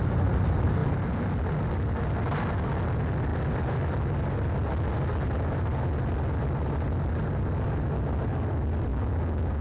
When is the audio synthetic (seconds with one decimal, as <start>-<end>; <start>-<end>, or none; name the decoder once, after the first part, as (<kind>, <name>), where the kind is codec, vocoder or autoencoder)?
8.9-9.6 (codec, DAC)